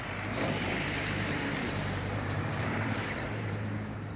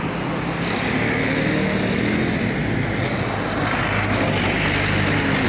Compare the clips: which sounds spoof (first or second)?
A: first